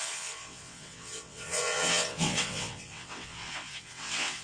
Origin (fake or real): fake